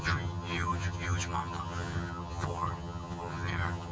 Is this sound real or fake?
fake